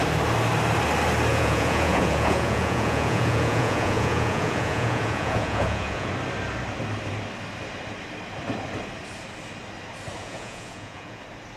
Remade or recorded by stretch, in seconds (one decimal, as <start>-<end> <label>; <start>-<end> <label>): 0.0-1.3 recorded; 1.3-6.1 remade; 6.1-10.2 recorded; 10.2-11.2 remade; 11.2-11.6 recorded